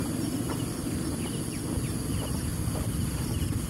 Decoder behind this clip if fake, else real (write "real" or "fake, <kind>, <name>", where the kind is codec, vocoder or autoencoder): real